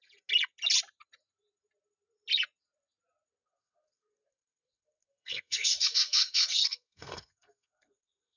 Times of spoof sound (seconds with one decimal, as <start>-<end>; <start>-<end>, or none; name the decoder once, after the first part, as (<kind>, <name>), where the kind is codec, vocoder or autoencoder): 3.4-8.4 (codec, SNAC)